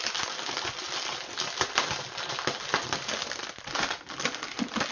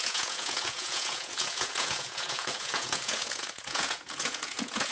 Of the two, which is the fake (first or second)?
second